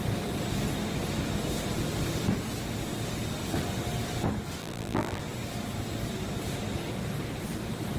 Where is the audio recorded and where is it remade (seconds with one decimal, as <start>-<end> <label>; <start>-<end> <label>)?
0.0-4.6 recorded; 4.6-5.2 remade; 5.2-8.0 recorded